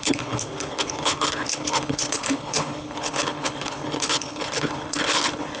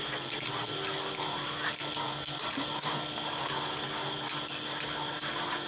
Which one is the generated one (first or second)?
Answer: first